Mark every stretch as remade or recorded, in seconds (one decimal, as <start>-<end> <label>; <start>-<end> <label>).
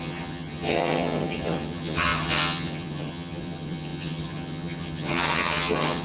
0.0-6.0 remade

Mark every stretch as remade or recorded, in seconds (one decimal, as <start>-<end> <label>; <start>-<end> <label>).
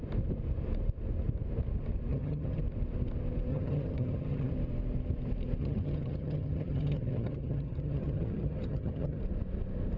0.0-2.1 recorded; 2.1-2.6 remade; 2.6-3.5 recorded; 3.5-4.5 remade; 4.5-5.6 recorded; 5.6-9.2 remade; 9.2-10.0 recorded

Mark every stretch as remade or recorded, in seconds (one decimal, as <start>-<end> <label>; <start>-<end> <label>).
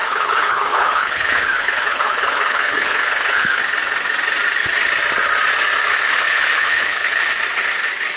0.0-3.6 remade; 3.6-5.9 recorded; 5.9-7.3 remade; 7.3-8.2 recorded